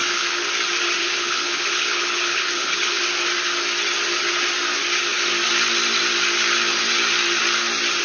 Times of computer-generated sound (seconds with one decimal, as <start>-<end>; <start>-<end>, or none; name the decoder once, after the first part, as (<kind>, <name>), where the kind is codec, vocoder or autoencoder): 0.0-0.5 (codec, HILCodec); 1.0-3.0